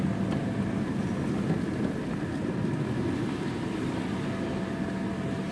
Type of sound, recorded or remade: recorded